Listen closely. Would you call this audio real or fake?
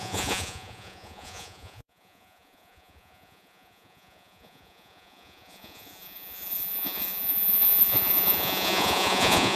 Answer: fake